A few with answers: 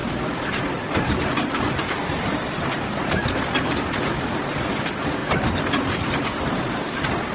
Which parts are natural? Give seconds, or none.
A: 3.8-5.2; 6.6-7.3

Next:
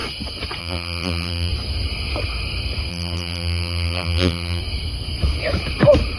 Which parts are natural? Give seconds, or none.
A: 0.0-0.6; 1.5-2.9; 4.6-6.2